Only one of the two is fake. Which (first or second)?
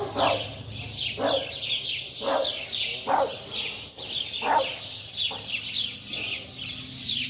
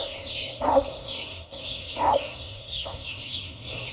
second